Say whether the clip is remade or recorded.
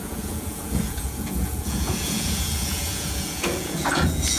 remade